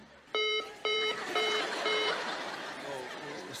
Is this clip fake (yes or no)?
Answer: yes